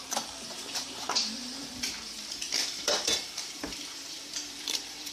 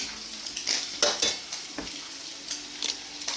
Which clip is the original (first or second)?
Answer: second